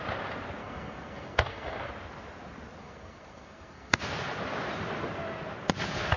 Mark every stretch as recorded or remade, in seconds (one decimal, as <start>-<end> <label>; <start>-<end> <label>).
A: 0.0-0.6 recorded; 0.6-1.9 remade; 1.9-2.8 recorded; 2.8-4.0 remade; 4.0-6.2 recorded